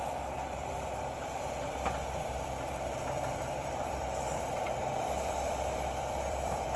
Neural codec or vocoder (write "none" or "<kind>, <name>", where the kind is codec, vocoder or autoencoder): vocoder, BigVGAN v2